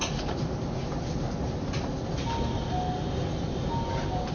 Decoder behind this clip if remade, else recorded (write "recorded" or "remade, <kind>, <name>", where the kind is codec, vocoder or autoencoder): recorded